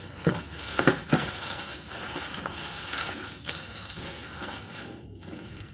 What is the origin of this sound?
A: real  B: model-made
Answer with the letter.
B